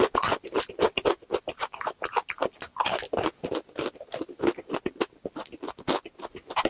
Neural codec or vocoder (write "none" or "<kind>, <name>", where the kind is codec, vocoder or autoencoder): none